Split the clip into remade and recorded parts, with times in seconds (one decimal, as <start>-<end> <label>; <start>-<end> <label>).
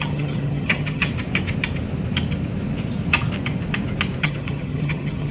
0.0-1.1 remade; 1.1-4.2 recorded; 4.2-5.3 remade